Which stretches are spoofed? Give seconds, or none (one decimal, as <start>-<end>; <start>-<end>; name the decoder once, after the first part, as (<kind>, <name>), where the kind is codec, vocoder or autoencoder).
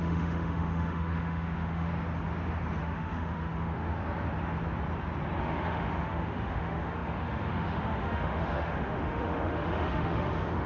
0.0-1.9 (autoencoder, DAC-VAE); 2.8-3.9; 5.4-10.7